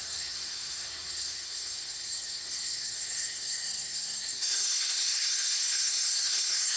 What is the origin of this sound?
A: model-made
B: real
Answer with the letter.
A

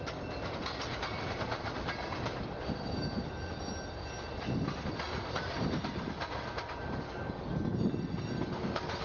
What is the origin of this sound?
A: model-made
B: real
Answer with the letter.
B